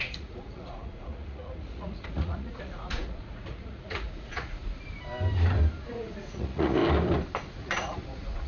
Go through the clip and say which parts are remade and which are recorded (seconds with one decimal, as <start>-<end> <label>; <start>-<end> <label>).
0.0-4.6 remade; 4.6-5.9 recorded; 5.9-6.8 remade; 6.8-7.5 recorded; 7.5-8.5 remade